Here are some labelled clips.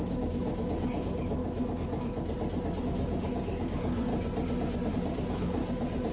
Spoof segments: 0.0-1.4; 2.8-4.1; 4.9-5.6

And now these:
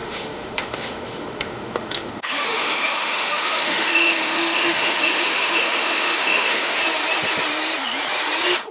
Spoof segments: 0.0-6.8

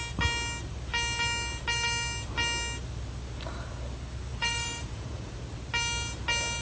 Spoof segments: 4.3-5.3

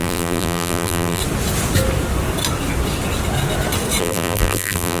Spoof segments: 0.0-1.2; 4.0-5.0

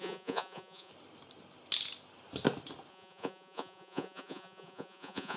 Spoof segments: 0.0-0.9; 2.9-5.4

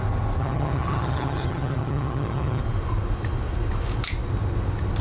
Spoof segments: 0.4-2.6